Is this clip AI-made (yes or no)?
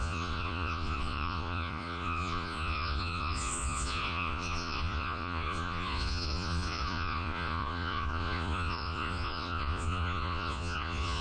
yes